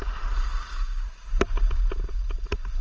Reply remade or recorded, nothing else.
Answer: remade